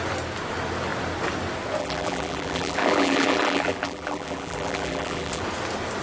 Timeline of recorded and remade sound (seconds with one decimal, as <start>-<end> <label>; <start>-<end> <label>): 0.0-1.8 recorded; 1.8-5.4 remade; 5.4-6.0 recorded